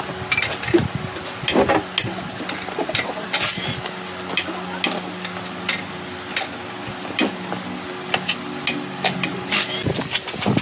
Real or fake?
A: real